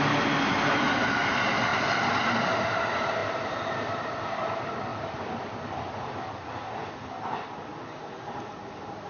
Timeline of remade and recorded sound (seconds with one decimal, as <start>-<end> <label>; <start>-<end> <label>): 0.0-1.7 recorded; 1.7-2.7 remade; 2.7-4.9 recorded; 4.9-5.5 remade; 5.5-9.1 recorded